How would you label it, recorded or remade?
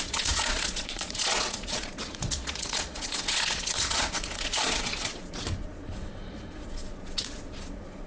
remade